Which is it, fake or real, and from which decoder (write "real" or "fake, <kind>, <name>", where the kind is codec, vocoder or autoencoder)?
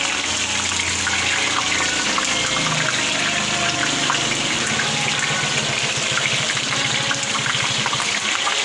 real